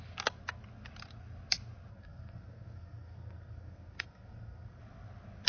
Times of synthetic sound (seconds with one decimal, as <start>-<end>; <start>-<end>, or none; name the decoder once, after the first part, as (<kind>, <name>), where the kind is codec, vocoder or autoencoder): 1.9-4.8 (codec, SNAC)